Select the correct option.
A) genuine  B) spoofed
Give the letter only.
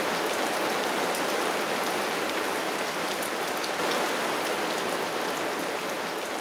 A